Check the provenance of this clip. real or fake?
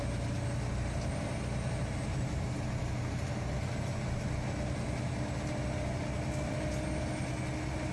real